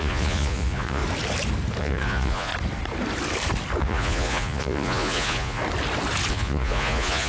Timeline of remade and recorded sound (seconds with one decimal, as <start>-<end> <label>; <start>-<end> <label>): 0.0-1.0 remade; 1.0-1.8 recorded; 1.8-2.5 remade; 2.5-3.8 recorded; 3.8-5.6 remade; 5.6-6.3 recorded; 6.3-7.3 remade